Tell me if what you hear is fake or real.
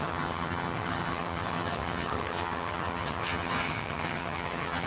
fake